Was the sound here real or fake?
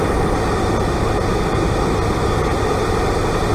real